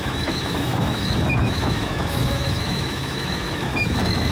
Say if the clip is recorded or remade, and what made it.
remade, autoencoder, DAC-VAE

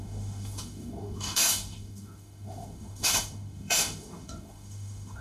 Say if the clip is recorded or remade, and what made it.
remade, autoencoder, DAC-VAE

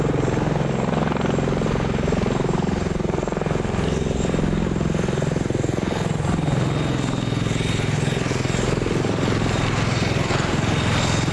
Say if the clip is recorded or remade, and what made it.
recorded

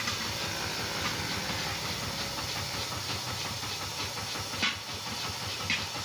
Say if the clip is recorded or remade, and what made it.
recorded